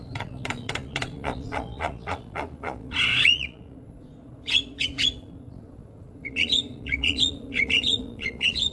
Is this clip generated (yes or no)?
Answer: yes